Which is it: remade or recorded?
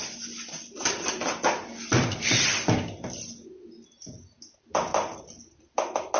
recorded